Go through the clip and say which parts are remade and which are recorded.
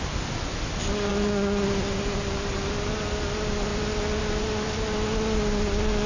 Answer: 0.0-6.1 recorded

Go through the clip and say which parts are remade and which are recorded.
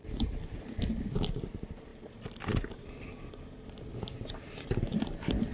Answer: 0.0-5.5 recorded